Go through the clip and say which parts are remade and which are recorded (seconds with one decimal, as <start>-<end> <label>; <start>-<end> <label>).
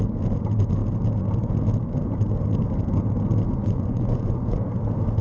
0.0-3.5 recorded; 3.5-4.6 remade; 4.6-5.2 recorded